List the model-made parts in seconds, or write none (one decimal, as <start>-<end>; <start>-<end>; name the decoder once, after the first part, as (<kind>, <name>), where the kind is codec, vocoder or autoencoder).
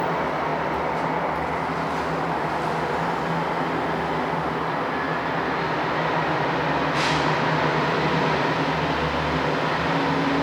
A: none